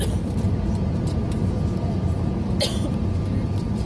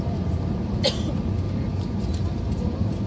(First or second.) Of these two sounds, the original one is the first